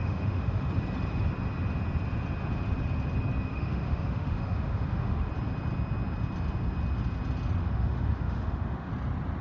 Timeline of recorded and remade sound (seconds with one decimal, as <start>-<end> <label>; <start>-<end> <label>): 0.0-0.7 remade; 0.7-3.5 recorded; 3.5-5.3 remade; 5.3-7.6 recorded; 7.6-8.9 remade; 8.9-9.4 recorded